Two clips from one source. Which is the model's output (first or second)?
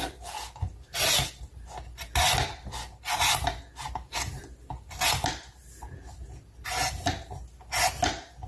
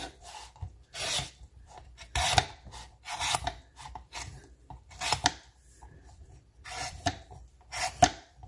second